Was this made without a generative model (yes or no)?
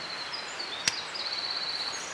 yes